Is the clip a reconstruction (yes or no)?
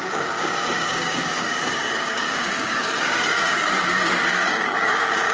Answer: yes